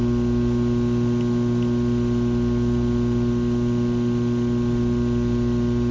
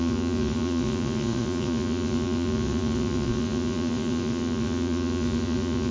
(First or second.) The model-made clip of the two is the second